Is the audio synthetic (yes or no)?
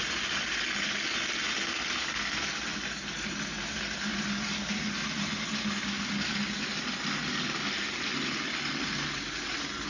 no